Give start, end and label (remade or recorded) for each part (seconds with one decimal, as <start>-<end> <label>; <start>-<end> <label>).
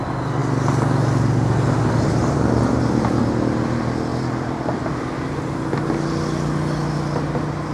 0.0-4.1 recorded; 4.1-4.9 remade; 4.9-7.7 recorded